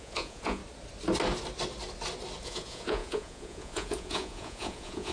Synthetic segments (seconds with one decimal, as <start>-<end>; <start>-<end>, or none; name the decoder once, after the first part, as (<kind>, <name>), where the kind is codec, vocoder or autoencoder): 0.0-0.6 (vocoder, Vocos); 2.4-5.1